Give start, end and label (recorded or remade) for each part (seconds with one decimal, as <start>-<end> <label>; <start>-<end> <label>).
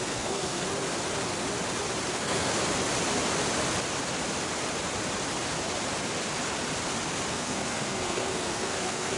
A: 0.0-0.7 remade; 0.7-2.1 recorded; 2.1-2.5 remade; 2.5-7.3 recorded; 7.3-9.2 remade